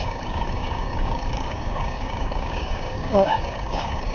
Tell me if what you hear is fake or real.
fake